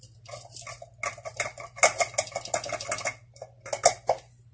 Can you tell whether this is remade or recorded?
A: recorded